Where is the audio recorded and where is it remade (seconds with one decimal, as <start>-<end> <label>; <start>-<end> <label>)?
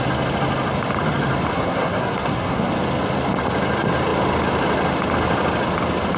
0.0-1.5 recorded; 1.5-2.7 remade; 2.7-6.2 recorded